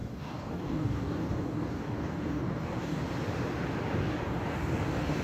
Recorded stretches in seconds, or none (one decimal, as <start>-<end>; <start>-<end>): 3.0-4.0